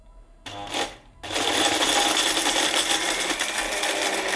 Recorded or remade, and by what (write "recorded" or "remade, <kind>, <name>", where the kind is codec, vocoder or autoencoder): recorded